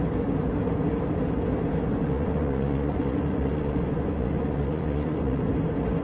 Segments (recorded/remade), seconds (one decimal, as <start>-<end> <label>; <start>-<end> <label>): 0.0-1.9 recorded; 1.9-5.5 remade; 5.5-6.0 recorded